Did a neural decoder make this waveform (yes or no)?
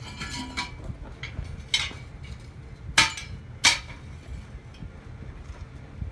no